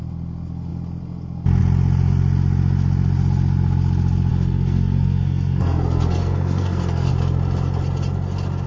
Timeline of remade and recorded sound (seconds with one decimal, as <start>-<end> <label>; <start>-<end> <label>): 0.0-4.3 recorded; 4.3-7.1 remade; 7.1-8.7 recorded